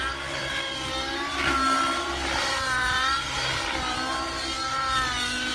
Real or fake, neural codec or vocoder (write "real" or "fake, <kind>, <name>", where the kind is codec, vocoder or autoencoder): fake, vocoder, BigVGAN v2